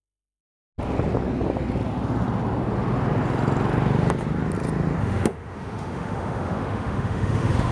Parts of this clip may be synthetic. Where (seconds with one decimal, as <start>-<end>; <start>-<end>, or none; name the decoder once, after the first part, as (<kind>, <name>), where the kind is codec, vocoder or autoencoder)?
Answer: 0.0-0.4 (autoencoder, DAC-VAE); 5.0-7.7